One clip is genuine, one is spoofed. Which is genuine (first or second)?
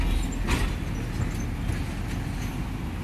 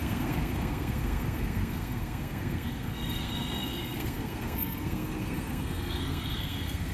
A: first